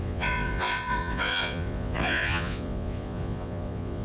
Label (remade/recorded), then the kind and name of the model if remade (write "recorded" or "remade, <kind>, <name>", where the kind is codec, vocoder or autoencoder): remade, vocoder, Vocos